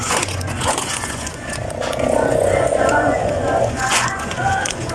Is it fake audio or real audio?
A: fake